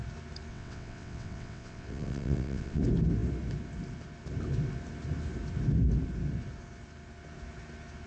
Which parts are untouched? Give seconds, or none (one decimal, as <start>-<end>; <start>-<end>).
0.0-0.5; 2.8-8.1